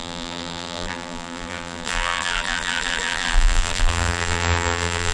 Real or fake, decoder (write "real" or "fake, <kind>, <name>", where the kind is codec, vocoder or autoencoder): fake, vocoder, BigVGAN v2